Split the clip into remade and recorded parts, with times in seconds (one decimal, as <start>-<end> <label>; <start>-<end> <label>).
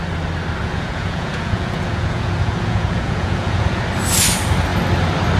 0.0-0.6 recorded; 0.6-3.8 remade; 3.8-5.4 recorded